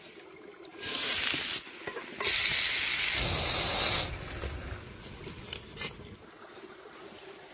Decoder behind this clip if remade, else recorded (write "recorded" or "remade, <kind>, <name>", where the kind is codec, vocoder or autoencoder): recorded